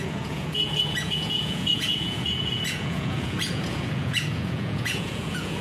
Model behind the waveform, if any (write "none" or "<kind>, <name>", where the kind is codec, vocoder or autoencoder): vocoder, Vocos